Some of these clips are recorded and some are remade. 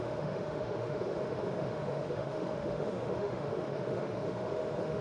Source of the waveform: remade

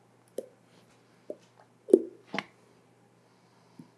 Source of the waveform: recorded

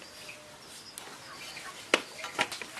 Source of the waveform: recorded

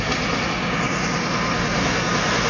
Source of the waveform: recorded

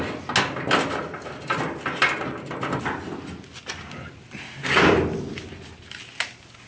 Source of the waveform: recorded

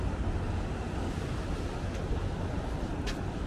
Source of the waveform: recorded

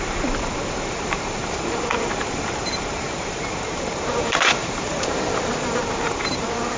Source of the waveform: remade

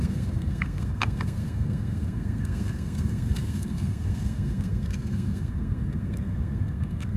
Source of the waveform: remade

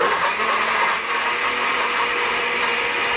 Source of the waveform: recorded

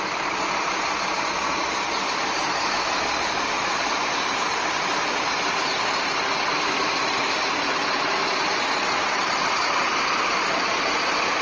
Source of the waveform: recorded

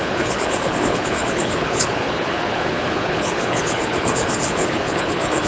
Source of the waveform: remade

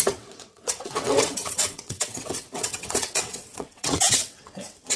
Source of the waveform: remade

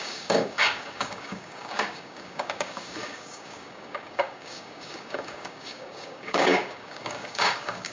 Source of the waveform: remade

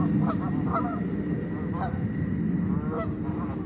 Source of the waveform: recorded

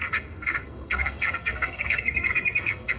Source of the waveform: remade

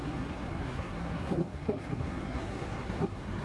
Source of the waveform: remade